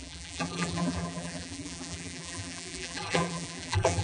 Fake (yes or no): yes